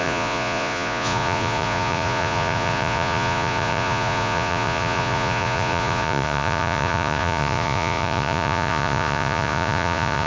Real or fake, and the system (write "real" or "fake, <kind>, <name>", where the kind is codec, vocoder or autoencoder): fake, vocoder, Vocos